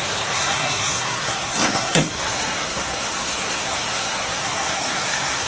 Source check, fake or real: fake